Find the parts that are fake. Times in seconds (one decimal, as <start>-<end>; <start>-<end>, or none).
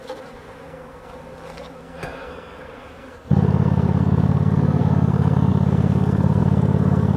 0.0-7.2